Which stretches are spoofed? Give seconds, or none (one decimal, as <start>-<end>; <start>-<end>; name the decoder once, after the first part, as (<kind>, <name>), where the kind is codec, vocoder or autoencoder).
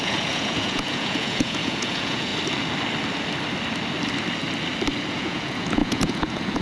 0.0-2.3 (vocoder, Vocos); 5.1-6.6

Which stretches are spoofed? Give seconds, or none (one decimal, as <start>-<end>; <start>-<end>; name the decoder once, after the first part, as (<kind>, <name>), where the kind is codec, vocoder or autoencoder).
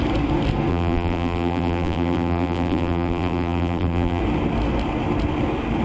0.7-4.2 (vocoder, BigVGAN v2)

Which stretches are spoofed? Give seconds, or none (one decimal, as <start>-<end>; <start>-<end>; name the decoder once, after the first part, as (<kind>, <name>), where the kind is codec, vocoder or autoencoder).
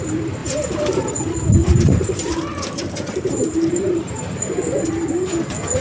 0.4-1.1 (vocoder, BigVGAN v2); 1.6-5.0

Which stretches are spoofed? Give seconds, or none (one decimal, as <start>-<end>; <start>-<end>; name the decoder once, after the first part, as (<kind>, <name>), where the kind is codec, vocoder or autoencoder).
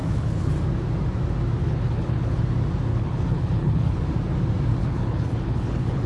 0.0-0.5 (codec, HILCodec); 1.6-2.4; 2.9-4.0; 4.8-6.1